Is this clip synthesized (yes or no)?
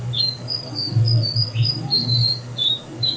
yes